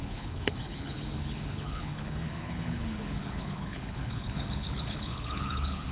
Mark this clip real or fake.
fake